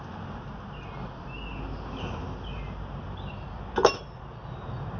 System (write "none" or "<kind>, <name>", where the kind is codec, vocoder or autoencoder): none